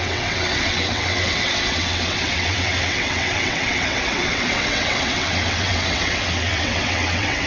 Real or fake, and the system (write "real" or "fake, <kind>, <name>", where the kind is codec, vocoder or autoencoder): fake, vocoder, WaveNeXt